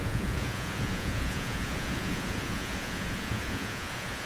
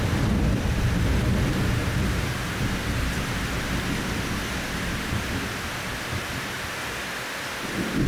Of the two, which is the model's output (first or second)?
first